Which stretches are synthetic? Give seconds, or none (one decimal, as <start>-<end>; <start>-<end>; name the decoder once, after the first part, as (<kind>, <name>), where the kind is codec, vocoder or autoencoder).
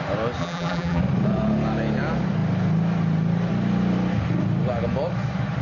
0.4-1.0 (vocoder, BigVGAN v2)